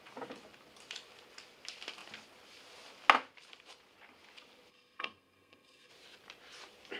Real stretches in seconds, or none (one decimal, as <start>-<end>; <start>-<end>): 0.0-4.7; 5.9-7.0